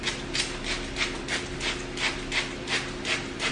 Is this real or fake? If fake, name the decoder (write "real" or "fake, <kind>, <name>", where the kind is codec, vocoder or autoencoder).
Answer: real